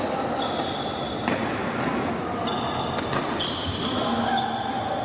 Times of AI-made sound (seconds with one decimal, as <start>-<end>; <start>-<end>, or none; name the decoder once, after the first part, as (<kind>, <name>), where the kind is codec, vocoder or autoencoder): none